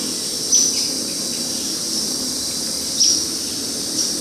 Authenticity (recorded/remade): recorded